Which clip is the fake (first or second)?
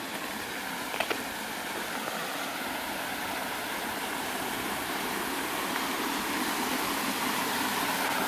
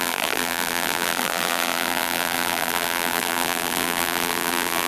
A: second